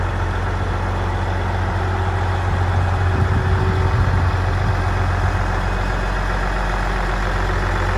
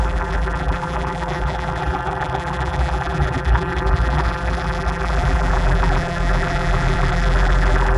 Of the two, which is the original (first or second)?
first